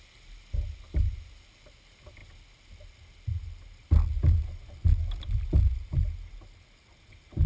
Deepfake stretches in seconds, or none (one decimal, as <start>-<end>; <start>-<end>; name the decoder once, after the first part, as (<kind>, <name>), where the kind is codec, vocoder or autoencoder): none